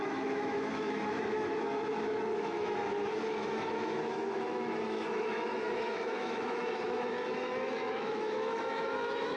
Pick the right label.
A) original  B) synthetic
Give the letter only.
B